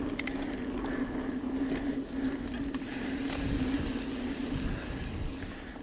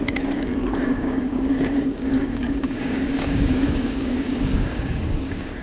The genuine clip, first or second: first